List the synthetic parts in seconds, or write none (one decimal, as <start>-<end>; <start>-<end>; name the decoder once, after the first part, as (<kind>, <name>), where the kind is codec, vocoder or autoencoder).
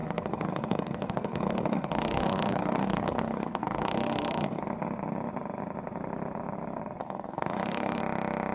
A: 0.0-4.6 (codec, SNAC); 7.0-8.0